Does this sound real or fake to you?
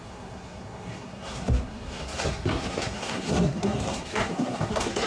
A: fake